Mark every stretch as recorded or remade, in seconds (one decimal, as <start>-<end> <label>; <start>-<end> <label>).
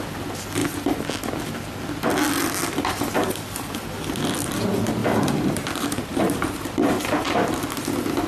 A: 0.0-5.0 recorded; 5.0-7.5 remade; 7.5-8.3 recorded